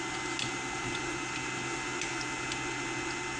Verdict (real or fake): real